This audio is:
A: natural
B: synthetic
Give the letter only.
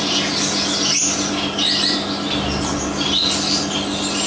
A